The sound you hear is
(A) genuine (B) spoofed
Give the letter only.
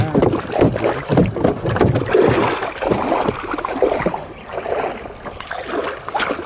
A